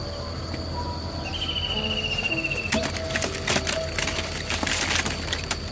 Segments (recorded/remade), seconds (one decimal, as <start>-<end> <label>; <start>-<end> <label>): 0.0-5.7 recorded